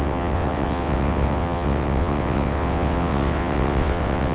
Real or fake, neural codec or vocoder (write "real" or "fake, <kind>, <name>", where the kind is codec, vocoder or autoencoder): fake, vocoder, WaveNeXt